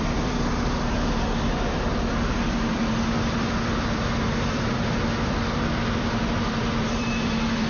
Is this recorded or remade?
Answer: remade